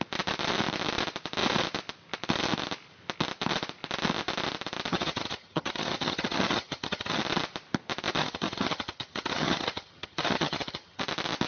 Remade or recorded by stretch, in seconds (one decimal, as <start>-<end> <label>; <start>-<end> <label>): 0.0-4.9 recorded; 4.9-7.2 remade; 7.2-8.2 recorded; 8.2-11.0 remade; 11.0-11.5 recorded